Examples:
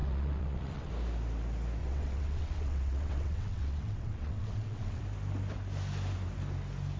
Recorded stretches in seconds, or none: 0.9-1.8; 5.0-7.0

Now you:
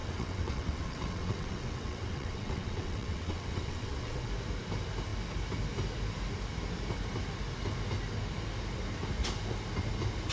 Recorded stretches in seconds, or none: 4.3-10.3

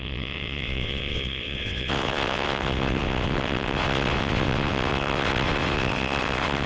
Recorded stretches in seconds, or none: none

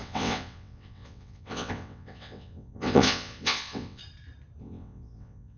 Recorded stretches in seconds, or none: 4.0-4.6